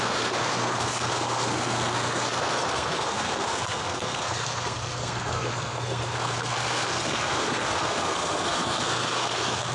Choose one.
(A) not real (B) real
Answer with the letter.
A